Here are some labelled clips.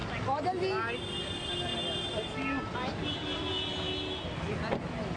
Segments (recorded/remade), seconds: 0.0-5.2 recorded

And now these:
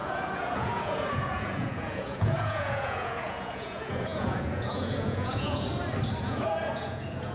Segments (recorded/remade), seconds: 0.0-5.7 remade; 5.7-6.2 recorded; 6.2-7.3 remade

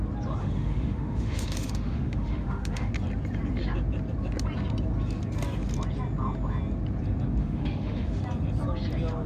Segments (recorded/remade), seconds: 0.0-0.4 recorded; 0.4-2.9 remade; 2.9-7.4 recorded; 7.4-8.2 remade; 8.2-9.3 recorded

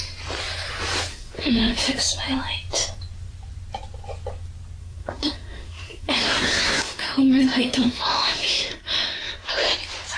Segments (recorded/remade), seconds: 0.0-1.1 recorded; 1.1-2.0 remade; 2.0-4.8 recorded; 4.8-9.5 remade; 9.5-10.2 recorded

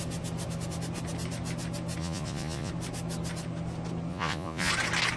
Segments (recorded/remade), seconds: 0.0-2.0 recorded; 2.0-2.7 remade; 2.7-4.1 recorded; 4.1-4.7 remade; 4.7-5.2 recorded

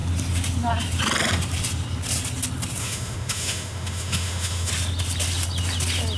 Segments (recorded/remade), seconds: 0.0-2.8 recorded; 2.8-4.7 remade; 4.7-6.2 recorded

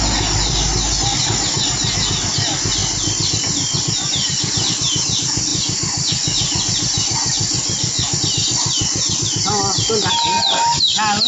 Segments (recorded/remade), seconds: 0.0-2.8 recorded; 2.8-4.7 remade; 4.7-11.3 recorded

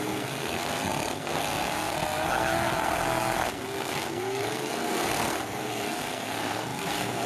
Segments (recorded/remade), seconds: 0.0-7.3 remade